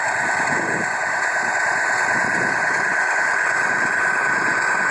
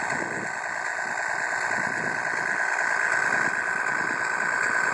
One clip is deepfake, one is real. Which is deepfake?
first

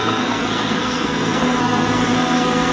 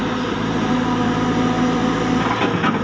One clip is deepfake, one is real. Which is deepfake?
first